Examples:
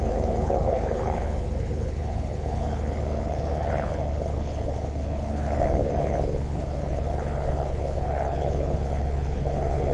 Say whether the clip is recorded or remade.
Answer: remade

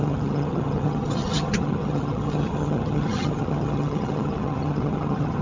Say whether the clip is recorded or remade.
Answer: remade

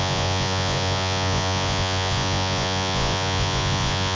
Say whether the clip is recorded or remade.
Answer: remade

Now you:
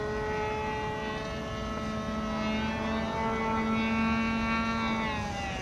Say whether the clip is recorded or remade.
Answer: recorded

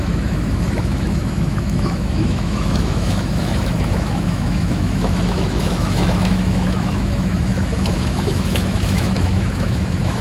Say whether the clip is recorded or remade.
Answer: remade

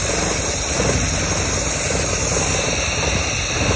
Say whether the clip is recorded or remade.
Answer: recorded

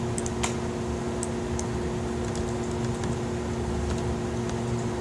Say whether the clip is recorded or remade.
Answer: recorded